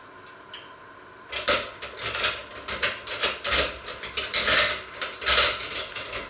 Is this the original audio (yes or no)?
yes